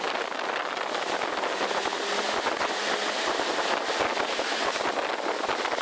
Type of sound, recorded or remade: recorded